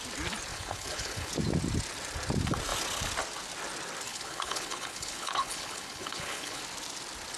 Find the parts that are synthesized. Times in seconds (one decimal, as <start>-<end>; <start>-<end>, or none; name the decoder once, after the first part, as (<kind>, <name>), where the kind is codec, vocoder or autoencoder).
0.5-1.3 (codec, HILCodec); 4.1-6.6